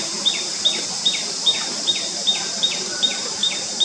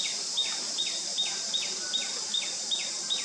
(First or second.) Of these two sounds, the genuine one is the second